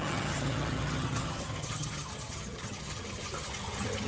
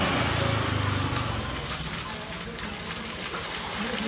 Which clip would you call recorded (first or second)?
second